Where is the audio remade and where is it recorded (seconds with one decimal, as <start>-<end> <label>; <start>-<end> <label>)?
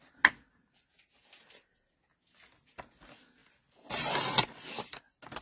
0.0-5.4 recorded